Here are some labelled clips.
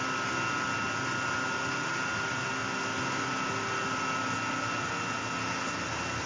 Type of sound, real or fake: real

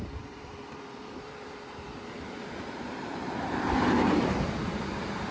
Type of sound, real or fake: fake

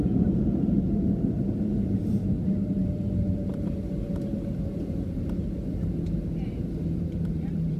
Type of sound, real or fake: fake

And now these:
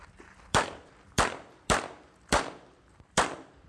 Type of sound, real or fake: fake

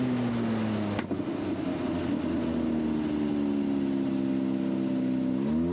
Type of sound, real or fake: real